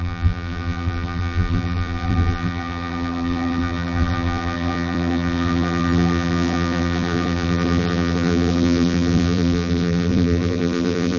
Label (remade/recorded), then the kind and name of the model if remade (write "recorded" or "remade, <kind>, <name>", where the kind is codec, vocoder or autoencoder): remade, vocoder, BigVGAN v2